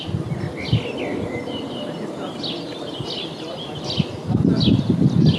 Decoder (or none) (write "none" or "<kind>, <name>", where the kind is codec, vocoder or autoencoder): none